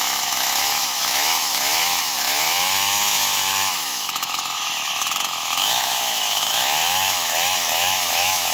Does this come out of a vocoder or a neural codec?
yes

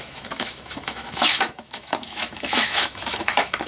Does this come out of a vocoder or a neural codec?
yes